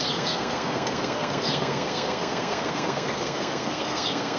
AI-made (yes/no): yes